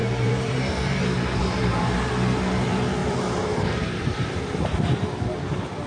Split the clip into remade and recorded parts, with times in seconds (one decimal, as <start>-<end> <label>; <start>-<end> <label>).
0.0-0.8 remade; 0.8-1.4 recorded; 1.4-2.1 remade; 2.1-3.0 recorded; 3.0-5.0 remade; 5.0-5.9 recorded